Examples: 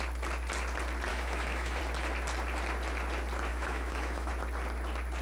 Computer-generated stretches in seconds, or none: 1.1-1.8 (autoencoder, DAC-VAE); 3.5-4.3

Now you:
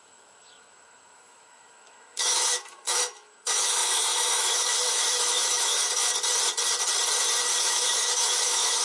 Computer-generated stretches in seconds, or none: 0.0-6.1 (autoencoder, DAC-VAE); 7.6-8.8

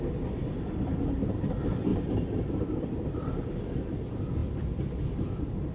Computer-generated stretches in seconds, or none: none

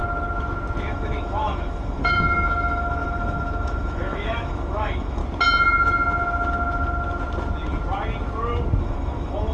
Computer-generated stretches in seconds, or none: 0.9-5.2 (autoencoder, DAC-VAE); 8.8-9.5

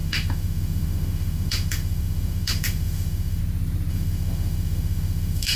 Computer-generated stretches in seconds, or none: 0.0-3.4 (autoencoder, DAC-VAE); 3.9-5.6